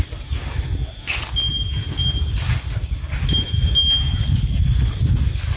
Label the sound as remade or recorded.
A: recorded